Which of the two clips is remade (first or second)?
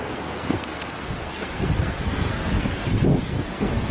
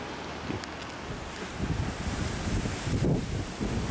first